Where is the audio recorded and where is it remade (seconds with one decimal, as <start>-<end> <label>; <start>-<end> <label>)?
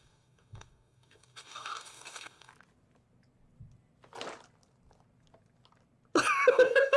0.0-2.5 remade; 2.5-6.5 recorded; 6.5-7.0 remade